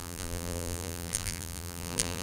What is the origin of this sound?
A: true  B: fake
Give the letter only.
B